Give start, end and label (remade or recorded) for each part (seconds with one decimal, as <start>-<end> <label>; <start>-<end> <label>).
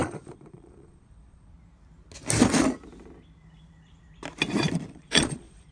0.0-1.5 remade; 1.5-4.9 recorded; 4.9-5.7 remade